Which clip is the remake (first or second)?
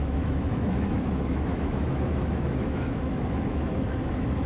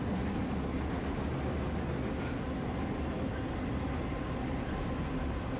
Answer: first